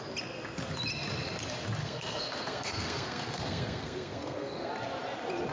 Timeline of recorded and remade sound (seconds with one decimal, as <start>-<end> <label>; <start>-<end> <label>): 0.0-1.8 recorded; 1.8-4.7 remade; 4.7-5.5 recorded